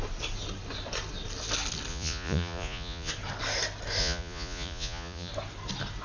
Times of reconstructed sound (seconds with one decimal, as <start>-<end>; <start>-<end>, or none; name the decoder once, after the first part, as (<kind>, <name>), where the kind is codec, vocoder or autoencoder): 1.9-3.1 (vocoder, Vocos); 4.0-5.3